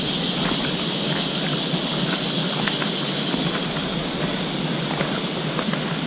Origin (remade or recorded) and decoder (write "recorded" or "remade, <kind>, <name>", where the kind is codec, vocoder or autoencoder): recorded